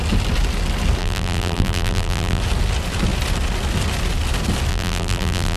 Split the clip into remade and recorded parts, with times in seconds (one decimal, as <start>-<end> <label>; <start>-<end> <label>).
0.0-1.0 recorded; 1.0-2.4 remade; 2.4-4.7 recorded; 4.7-5.6 remade